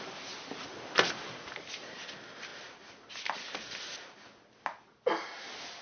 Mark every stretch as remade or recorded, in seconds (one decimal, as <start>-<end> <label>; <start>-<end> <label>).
0.0-5.8 recorded